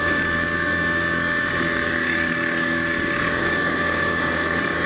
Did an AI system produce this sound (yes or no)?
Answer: yes